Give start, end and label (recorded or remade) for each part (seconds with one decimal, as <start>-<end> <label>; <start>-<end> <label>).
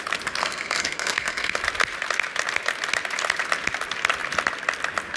0.0-0.4 recorded; 0.4-1.6 remade; 1.6-5.2 recorded